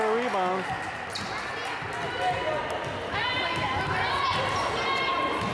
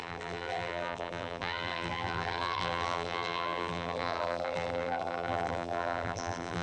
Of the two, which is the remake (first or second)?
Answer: second